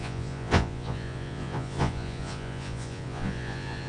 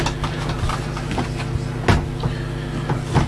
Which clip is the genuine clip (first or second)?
second